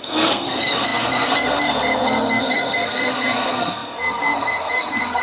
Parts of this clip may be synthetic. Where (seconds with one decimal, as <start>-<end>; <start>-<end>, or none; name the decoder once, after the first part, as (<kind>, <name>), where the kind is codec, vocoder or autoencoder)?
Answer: 0.0-5.2 (codec, SNAC)